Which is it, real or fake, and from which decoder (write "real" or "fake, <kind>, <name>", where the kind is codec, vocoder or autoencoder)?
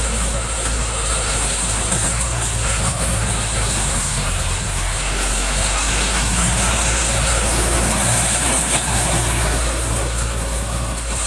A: fake, codec, SNAC